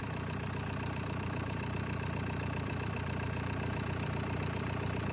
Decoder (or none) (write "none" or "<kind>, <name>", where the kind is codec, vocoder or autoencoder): vocoder, BigVGAN v2